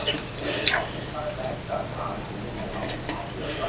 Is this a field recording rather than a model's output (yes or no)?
yes